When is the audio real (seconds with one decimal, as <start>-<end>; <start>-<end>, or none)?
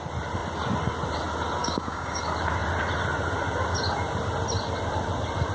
0.0-1.6; 2.2-5.5